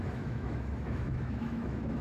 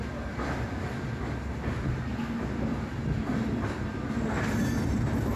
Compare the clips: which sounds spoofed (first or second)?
first